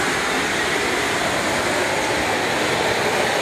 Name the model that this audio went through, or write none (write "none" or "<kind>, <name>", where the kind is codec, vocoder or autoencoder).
none